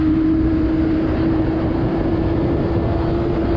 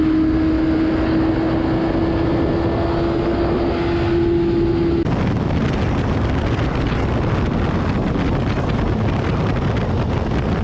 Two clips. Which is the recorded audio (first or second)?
second